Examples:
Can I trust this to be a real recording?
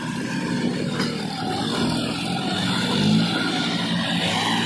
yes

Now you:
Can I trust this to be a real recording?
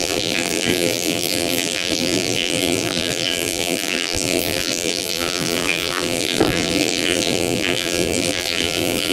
no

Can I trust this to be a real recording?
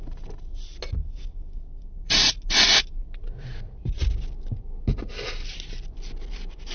yes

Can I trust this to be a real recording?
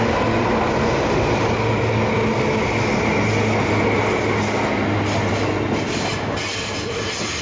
yes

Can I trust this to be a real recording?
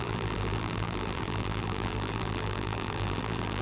no